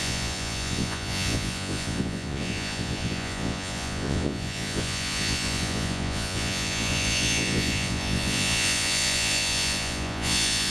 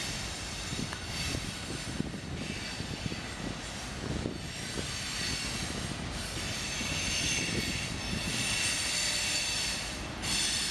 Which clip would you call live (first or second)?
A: second